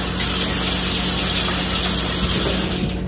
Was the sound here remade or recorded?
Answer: recorded